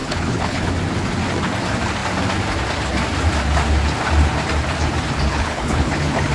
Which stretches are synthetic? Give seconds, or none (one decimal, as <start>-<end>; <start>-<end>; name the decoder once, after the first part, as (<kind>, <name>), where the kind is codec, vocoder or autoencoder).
0.0-0.7 (codec, HILCodec); 5.3-6.3